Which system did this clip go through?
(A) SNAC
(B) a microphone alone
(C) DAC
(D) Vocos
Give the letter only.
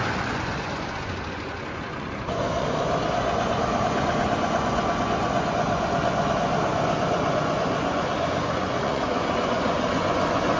D